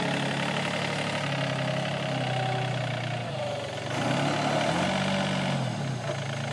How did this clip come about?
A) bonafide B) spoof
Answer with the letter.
A